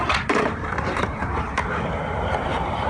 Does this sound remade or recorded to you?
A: remade